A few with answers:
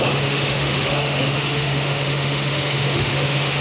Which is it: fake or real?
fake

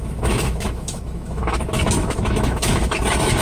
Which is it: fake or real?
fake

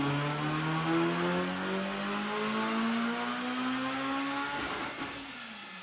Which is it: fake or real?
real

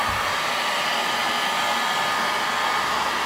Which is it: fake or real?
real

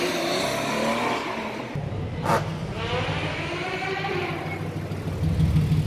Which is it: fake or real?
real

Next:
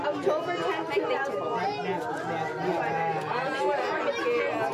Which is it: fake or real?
real